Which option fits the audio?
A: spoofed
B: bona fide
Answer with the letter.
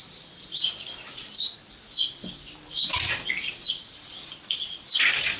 B